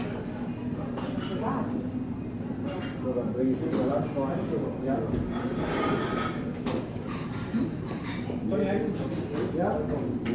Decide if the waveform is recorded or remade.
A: recorded